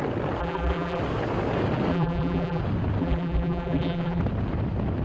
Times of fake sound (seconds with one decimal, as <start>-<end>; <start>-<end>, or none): 0.4-1.0; 1.9-2.6; 3.0-4.2